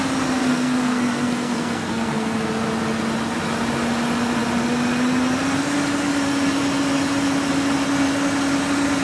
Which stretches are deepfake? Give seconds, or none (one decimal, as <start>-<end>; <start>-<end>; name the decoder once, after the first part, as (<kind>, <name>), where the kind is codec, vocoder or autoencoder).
0.4-2.5 (codec, SNAC)

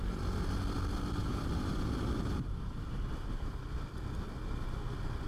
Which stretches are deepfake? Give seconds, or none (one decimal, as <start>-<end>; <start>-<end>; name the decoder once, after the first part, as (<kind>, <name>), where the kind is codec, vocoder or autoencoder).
1.2-3.5 (vocoder, BigVGAN v2)